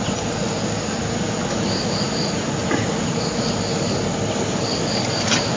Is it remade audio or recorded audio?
recorded